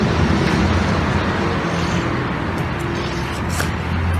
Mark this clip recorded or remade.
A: recorded